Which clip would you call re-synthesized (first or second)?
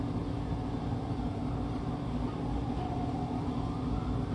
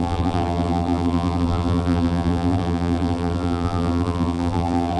second